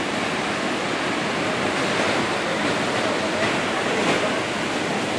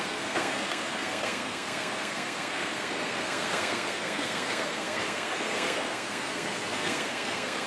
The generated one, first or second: second